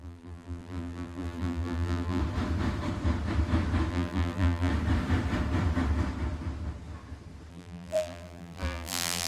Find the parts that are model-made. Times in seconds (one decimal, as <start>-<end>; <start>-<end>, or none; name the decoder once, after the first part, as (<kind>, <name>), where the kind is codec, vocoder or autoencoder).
0.0-2.2 (vocoder, BigVGAN v2); 3.9-4.7; 7.5-9.3